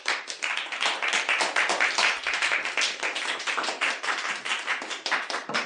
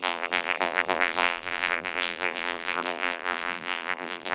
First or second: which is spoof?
second